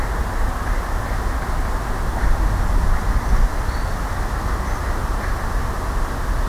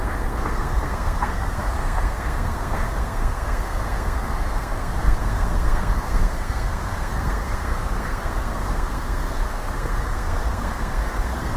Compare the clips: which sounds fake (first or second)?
second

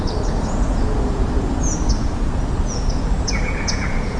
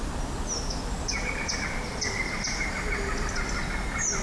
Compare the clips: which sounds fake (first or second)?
first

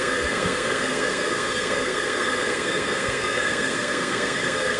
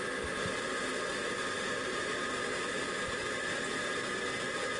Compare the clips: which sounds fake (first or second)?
first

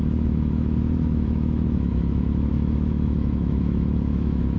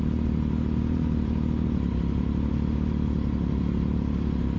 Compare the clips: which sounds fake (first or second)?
first